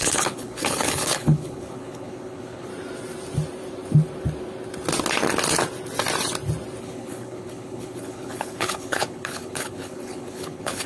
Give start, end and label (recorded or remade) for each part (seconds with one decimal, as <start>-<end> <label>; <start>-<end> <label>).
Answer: 0.0-2.7 remade; 2.7-6.8 recorded; 6.8-10.9 remade